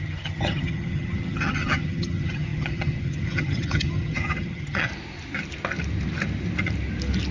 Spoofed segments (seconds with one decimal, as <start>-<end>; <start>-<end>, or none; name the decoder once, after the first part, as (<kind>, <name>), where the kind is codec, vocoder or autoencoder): 0.0-4.9 (vocoder, HiFi-GAN)